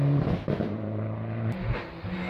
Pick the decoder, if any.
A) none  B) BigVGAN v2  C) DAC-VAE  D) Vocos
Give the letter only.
A